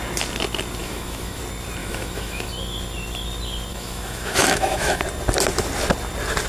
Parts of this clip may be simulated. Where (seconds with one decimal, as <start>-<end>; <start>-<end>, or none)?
0.8-1.4; 1.8-2.5; 3.7-5.0